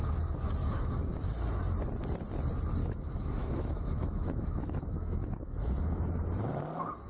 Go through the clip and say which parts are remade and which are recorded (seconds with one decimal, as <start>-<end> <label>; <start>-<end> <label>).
0.0-0.6 recorded; 0.6-1.2 remade; 1.2-2.8 recorded; 2.8-6.0 remade; 6.0-7.1 recorded